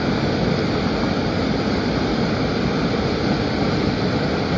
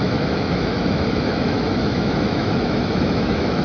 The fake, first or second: second